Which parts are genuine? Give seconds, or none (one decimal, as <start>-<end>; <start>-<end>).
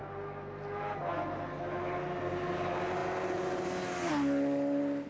0.0-5.1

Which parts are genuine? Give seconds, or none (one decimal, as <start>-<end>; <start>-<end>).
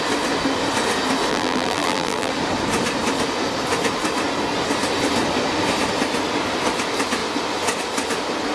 0.0-1.3; 2.3-8.5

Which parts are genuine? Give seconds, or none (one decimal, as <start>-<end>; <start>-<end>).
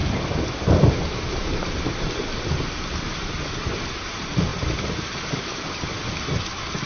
0.0-1.3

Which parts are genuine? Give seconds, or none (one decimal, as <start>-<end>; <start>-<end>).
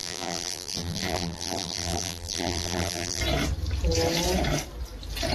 3.2-5.3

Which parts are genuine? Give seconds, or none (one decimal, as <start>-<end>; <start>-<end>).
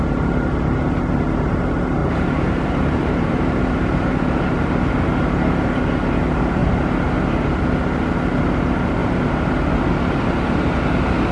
0.0-2.0; 5.2-11.3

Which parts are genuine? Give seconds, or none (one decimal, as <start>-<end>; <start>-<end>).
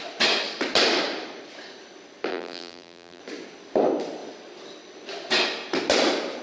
0.0-2.3; 3.2-6.4